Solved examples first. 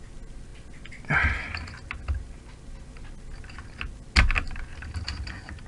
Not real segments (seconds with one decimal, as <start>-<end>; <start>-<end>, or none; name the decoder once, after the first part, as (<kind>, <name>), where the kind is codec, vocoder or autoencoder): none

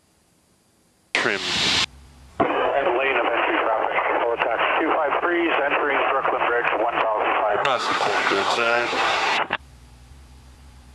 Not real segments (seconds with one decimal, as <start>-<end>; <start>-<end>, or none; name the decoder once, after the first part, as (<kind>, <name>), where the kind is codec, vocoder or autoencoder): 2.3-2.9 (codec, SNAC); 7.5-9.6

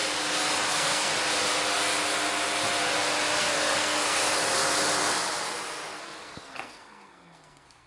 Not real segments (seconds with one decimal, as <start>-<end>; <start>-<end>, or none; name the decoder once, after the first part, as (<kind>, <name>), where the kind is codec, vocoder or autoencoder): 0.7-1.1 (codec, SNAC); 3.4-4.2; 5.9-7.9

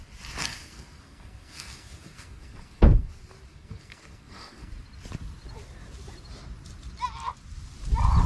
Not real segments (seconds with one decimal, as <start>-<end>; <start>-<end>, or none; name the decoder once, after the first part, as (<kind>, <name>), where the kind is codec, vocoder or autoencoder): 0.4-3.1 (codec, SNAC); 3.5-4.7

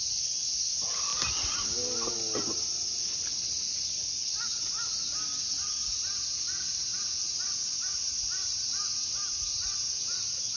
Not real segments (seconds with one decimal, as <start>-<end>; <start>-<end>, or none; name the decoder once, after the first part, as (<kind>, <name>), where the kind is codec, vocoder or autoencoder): none

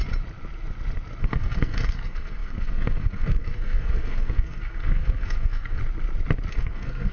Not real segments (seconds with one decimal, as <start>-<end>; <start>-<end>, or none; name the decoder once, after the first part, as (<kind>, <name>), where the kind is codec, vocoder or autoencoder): 1.2-5.8 (codec, SNAC); 6.5-7.1